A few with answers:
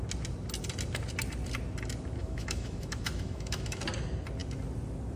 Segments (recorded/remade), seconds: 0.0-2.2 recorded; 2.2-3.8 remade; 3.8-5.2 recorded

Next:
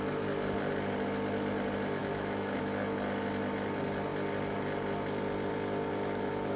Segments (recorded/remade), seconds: 0.0-2.0 recorded; 2.0-2.6 remade; 2.6-5.9 recorded; 5.9-6.6 remade

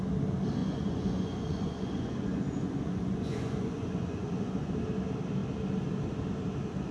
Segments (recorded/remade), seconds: 0.0-0.6 recorded; 0.6-4.7 remade; 4.7-6.9 recorded

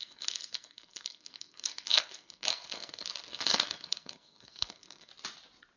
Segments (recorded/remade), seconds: 0.0-5.1 remade; 5.1-5.8 recorded

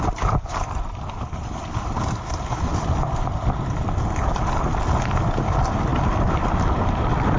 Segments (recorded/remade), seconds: 0.0-0.5 remade; 0.5-1.8 recorded; 1.8-2.7 remade; 2.7-5.4 recorded; 5.4-5.9 remade; 5.9-7.0 recorded; 7.0-7.4 remade

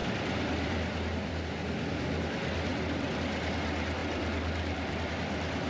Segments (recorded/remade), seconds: 0.0-1.3 remade; 1.3-2.7 recorded; 2.7-3.2 remade; 3.2-4.0 recorded; 4.0-5.1 remade; 5.1-5.7 recorded